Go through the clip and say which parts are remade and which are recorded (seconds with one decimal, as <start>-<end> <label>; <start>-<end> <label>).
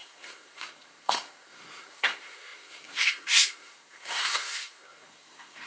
0.0-5.7 remade